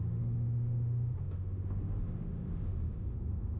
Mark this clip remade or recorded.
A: remade